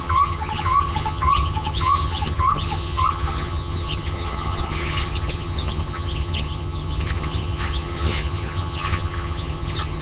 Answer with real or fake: fake